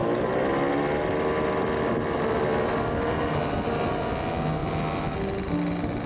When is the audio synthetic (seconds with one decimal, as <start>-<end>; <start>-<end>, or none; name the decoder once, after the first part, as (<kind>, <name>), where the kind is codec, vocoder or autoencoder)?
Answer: none

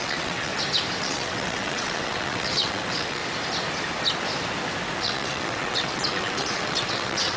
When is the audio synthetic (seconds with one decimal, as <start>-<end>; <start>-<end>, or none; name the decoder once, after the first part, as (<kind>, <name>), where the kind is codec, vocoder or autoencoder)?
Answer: 0.0-0.5 (vocoder, WaveNeXt); 1.0-3.2; 5.0-7.4

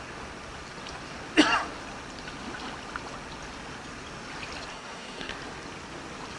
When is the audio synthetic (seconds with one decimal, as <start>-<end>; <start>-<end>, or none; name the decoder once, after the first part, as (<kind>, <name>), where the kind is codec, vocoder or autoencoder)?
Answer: 4.7-5.3 (codec, SNAC)

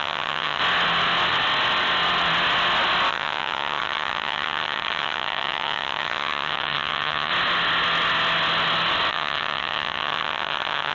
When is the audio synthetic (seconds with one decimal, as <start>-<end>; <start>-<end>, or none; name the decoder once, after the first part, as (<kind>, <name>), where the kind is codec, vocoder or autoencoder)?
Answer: 0.0-0.6 (vocoder, HiFi-GAN); 3.1-7.3; 9.1-10.9